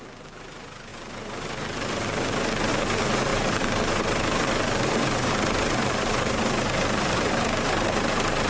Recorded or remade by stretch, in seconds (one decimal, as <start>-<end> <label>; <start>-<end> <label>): 0.0-3.3 recorded; 3.3-8.5 remade